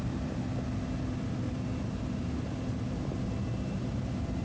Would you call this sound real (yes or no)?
yes